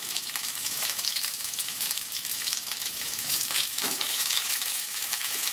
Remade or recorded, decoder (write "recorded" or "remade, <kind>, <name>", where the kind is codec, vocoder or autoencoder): remade, autoencoder, DAC-VAE